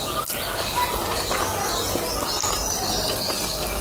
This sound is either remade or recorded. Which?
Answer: recorded